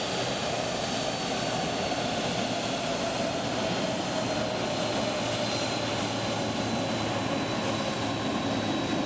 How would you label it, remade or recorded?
recorded